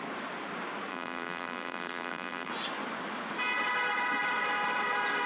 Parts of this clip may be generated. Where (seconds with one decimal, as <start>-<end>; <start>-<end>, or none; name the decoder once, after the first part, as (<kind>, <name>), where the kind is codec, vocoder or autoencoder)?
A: 0.9-2.5 (vocoder, BigVGAN v2)